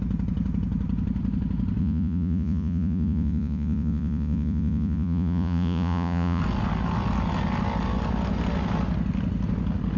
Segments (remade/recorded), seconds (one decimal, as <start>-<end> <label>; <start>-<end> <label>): 0.0-1.8 recorded; 1.8-6.4 remade; 6.4-10.0 recorded